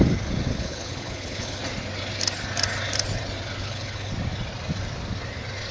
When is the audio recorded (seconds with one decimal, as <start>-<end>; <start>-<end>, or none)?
0.0-0.5; 1.6-3.6; 4.1-5.7